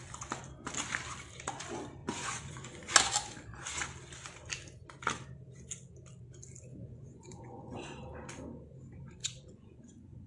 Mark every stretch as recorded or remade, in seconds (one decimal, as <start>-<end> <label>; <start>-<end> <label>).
0.0-2.0 recorded; 2.0-2.9 remade; 2.9-6.7 recorded; 6.7-8.0 remade; 8.0-9.2 recorded; 9.2-10.3 remade